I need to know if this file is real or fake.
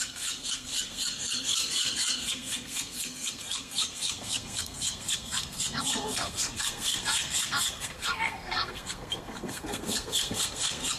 fake